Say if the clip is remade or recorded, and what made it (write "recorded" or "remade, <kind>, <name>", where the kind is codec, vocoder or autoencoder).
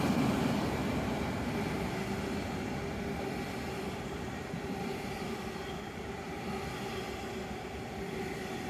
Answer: recorded